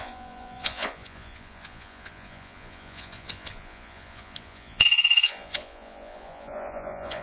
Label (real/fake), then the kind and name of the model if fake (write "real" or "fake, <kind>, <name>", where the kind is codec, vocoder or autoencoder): fake, vocoder, Vocos